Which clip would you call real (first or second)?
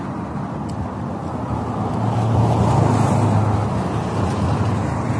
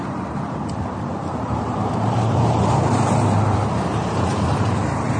first